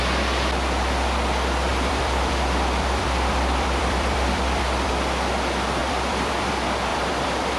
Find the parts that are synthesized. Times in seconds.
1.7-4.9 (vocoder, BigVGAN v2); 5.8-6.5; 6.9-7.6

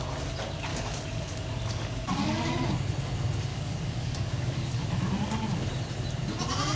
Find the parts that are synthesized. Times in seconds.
0.7-2.7 (codec, DAC); 3.5-5.7

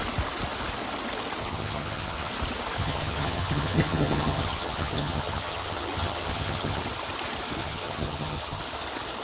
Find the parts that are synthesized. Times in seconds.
1.4-2.3 (vocoder, HiFi-GAN); 2.8-6.8; 7.6-8.6

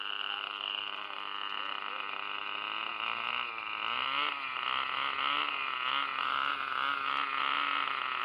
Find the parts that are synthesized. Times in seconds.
none